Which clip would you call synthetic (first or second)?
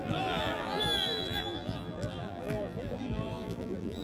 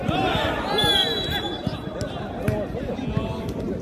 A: first